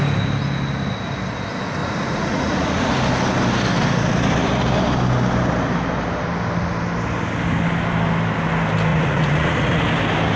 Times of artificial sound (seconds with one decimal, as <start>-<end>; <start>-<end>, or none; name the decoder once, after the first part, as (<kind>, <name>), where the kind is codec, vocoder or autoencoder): 1.8-2.9 (vocoder, Vocos); 8.9-9.8